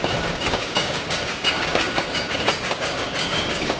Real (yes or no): no